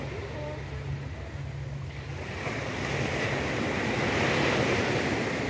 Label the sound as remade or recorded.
recorded